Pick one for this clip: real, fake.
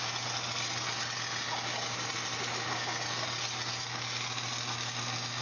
real